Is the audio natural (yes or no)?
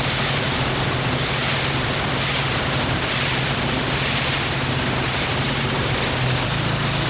yes